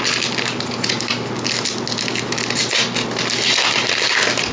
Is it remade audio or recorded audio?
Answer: recorded